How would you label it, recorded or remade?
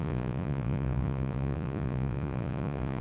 remade